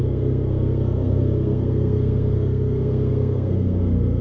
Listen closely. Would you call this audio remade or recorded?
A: remade